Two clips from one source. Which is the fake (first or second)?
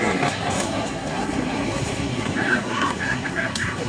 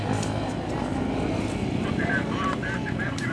first